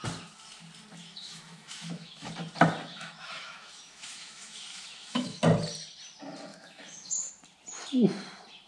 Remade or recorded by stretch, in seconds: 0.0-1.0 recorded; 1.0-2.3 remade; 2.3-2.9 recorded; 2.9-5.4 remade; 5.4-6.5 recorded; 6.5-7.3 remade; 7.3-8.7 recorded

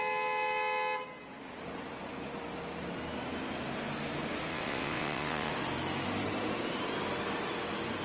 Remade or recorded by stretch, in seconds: 0.0-4.5 recorded; 4.5-5.5 remade; 5.5-8.0 recorded

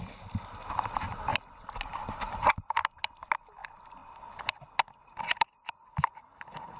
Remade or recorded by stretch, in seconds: 0.0-6.8 recorded

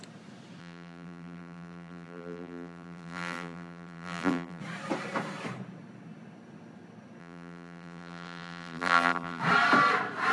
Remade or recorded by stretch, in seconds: 0.0-0.6 recorded; 0.6-4.6 remade; 4.6-7.2 recorded; 7.2-9.4 remade; 9.4-10.3 recorded

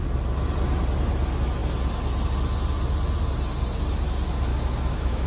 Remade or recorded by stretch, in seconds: 0.0-4.5 recorded; 4.5-5.3 remade

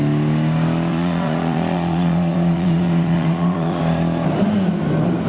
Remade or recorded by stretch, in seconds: 0.0-0.9 recorded; 0.9-3.8 remade; 3.8-5.3 recorded

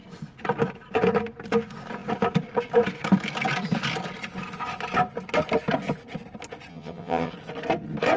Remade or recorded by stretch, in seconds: 0.0-6.7 recorded; 6.7-7.3 remade; 7.3-8.2 recorded

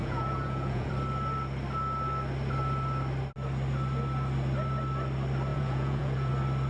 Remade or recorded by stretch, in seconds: 0.0-0.9 remade; 0.9-5.5 recorded; 5.5-6.3 remade; 6.3-6.7 recorded